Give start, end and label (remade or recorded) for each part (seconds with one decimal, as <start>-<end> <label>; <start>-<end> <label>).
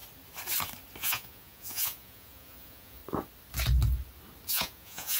0.0-1.0 recorded; 1.0-3.0 remade; 3.0-4.5 recorded; 4.5-5.2 remade